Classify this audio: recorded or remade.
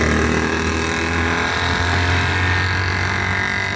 recorded